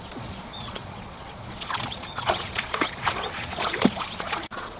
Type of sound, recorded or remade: remade